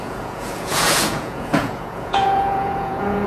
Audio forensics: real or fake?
fake